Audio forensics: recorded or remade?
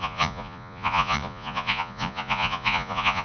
remade